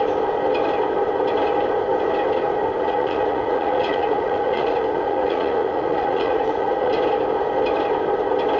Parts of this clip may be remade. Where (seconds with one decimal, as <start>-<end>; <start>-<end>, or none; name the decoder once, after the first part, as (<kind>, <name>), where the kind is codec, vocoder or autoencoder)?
2.8-6.9 (vocoder, Vocos)